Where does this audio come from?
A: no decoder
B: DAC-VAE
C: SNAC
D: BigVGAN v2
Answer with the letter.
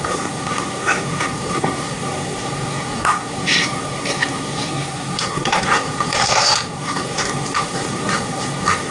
C